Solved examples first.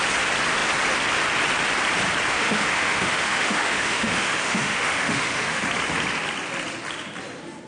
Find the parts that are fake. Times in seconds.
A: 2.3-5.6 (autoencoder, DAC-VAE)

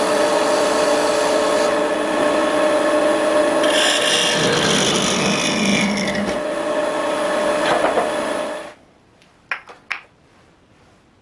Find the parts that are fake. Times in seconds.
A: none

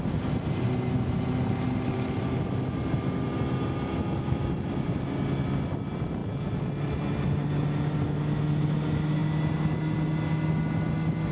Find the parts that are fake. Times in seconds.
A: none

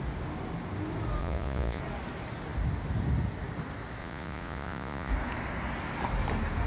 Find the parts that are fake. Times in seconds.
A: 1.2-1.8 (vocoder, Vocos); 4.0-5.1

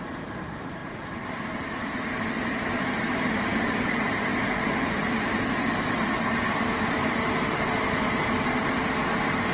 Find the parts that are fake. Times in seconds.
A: 0.0-4.3 (vocoder, BigVGAN v2); 6.6-9.5

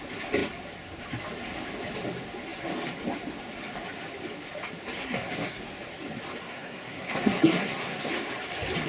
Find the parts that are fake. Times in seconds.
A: 5.0-5.6 (codec, SNAC); 6.4-8.1

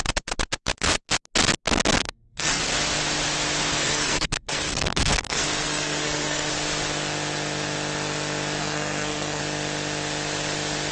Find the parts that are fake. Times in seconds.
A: 2.0-2.6 (codec, SNAC); 3.7-6.5; 8.6-9.4

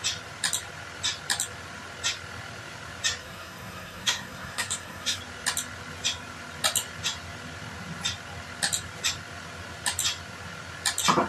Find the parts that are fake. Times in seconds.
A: 3.2-5.2 (codec, SNAC)